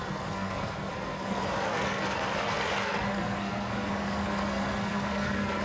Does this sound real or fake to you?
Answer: fake